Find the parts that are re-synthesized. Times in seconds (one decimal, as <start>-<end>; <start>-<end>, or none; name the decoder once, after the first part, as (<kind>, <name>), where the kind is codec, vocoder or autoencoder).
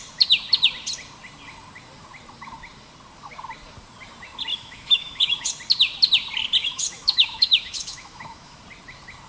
4.5-5.5 (autoencoder, DAC-VAE); 6.6-8.6